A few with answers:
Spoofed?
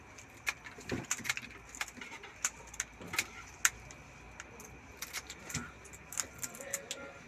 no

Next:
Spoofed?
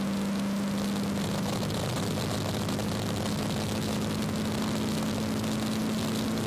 no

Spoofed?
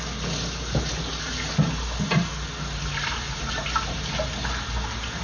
no